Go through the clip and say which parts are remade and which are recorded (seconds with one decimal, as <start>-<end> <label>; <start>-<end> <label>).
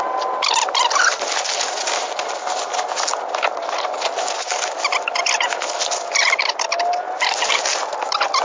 0.0-8.4 recorded